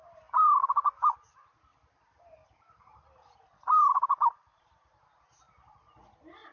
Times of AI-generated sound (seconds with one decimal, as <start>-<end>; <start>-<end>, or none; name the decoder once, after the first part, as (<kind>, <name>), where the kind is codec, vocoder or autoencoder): 2.4-5.0 (vocoder, BigVGAN v2)